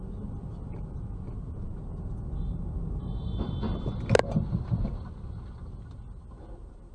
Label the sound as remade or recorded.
recorded